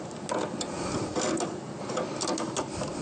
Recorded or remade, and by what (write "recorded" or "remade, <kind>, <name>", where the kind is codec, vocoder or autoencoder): recorded